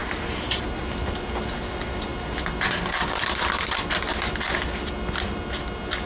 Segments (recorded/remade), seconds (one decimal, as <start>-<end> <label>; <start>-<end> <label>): 0.0-0.8 remade; 0.8-6.1 recorded